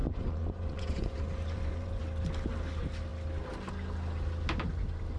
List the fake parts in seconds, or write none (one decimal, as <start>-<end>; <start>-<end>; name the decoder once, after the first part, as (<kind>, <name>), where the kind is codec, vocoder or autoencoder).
0.0-2.0 (vocoder, Vocos)